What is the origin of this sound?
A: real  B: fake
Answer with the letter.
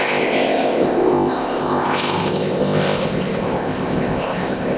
B